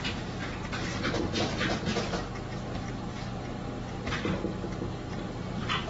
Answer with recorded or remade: recorded